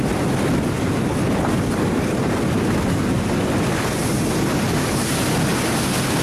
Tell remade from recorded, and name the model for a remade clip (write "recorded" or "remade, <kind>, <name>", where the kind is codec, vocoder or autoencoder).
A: recorded